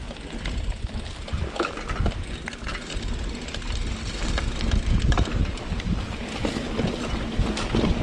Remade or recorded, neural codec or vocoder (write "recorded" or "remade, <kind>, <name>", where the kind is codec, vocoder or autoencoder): recorded